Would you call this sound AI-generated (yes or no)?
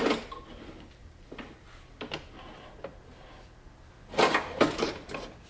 no